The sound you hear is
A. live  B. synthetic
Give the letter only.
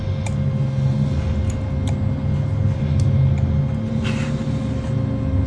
A